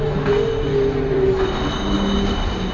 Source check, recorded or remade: recorded